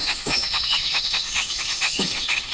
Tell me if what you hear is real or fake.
fake